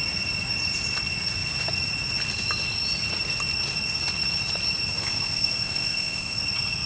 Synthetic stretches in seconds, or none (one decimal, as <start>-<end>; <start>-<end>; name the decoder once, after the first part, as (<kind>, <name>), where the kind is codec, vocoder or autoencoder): 5.0-6.4 (codec, ZipCodec)